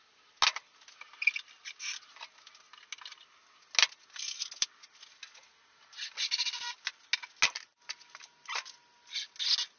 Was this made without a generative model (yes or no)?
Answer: yes